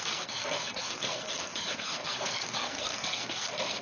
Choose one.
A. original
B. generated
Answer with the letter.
B